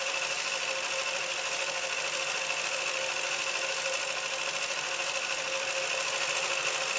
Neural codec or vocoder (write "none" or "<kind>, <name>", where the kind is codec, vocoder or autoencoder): none